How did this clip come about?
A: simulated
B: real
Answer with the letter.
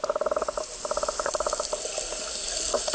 B